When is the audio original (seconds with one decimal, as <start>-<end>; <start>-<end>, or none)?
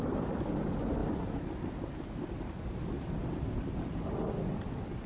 0.0-5.1